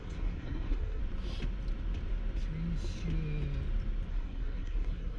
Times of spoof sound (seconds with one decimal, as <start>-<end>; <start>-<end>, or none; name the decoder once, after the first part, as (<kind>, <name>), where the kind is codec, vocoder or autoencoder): 0.0-1.0 (codec, SNAC); 4.1-5.2